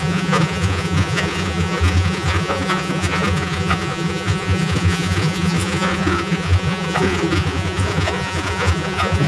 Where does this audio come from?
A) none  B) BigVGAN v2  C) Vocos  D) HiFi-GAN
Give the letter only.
C